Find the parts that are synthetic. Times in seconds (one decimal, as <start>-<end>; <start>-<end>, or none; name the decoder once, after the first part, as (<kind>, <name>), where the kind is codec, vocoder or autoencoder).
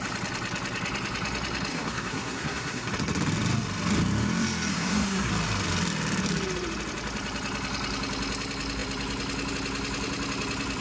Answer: 1.7-2.9 (codec, SNAC); 4.7-5.3